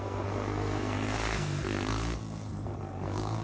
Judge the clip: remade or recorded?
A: remade